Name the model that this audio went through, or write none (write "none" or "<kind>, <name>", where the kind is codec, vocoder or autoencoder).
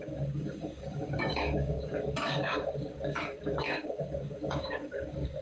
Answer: codec, DAC